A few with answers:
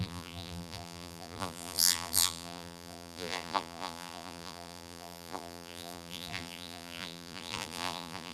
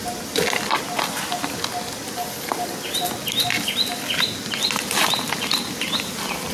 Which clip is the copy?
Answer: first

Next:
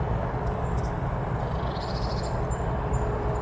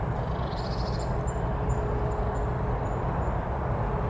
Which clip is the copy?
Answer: first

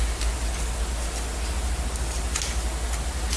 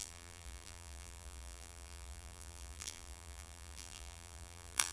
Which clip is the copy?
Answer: second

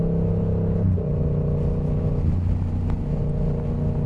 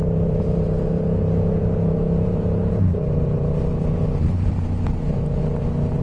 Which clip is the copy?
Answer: second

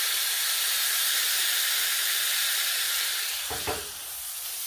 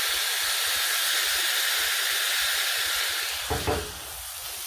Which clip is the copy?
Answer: first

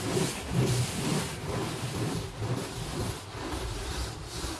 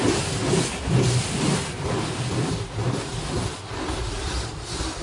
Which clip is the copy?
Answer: first